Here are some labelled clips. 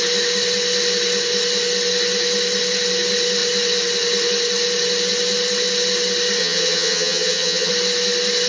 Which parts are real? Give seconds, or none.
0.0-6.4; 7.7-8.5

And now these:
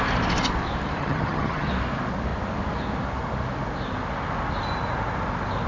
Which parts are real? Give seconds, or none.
0.0-1.0; 1.7-5.7

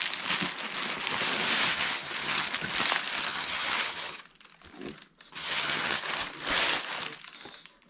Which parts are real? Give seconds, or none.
0.0-1.7; 2.5-3.3; 4.2-5.4; 6.0-7.9